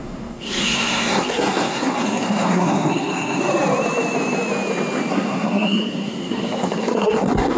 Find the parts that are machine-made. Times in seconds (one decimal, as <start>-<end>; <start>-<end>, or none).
0.0-3.4; 5.1-7.6